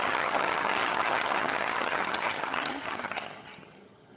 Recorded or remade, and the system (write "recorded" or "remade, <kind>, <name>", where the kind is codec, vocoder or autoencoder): remade, vocoder, HiFi-GAN